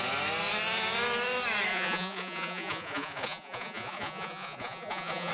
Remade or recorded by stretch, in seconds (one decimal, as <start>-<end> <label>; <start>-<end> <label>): 0.0-1.7 recorded; 1.7-5.3 remade